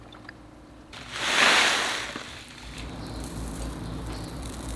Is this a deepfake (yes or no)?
yes